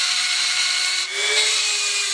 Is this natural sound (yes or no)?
no